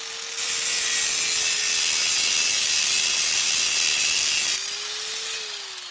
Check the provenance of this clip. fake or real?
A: real